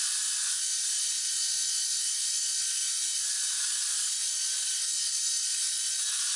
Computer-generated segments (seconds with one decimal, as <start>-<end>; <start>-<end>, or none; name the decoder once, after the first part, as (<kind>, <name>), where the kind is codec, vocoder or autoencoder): 0.0-2.8 (vocoder, BigVGAN v2); 3.7-6.4